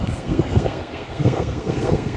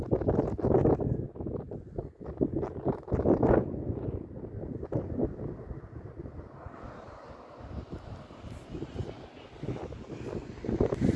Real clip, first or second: second